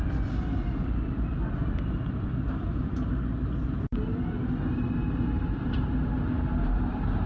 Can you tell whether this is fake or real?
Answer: real